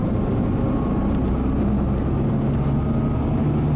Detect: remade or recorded recorded